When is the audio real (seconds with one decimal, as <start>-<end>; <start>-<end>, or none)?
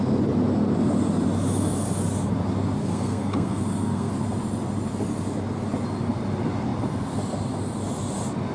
0.0-2.8; 4.1-8.5